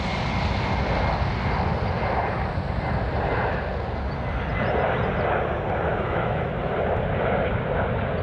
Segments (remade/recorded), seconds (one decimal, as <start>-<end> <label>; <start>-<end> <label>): 0.0-5.9 recorded; 5.9-6.5 remade; 6.5-8.2 recorded